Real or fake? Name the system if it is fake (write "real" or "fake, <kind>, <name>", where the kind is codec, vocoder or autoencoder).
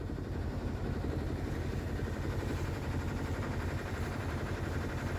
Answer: real